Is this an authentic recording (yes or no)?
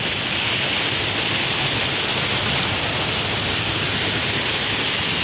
yes